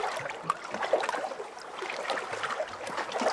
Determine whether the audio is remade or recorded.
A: recorded